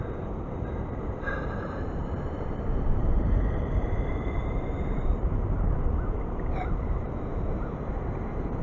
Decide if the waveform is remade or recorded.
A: remade